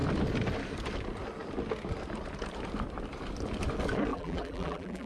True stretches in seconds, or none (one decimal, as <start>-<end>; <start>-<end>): 0.0-4.1